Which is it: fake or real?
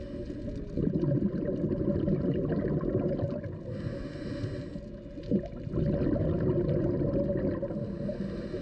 real